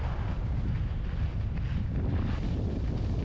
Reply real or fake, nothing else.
real